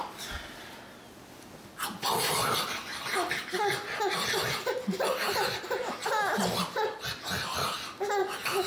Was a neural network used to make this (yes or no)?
no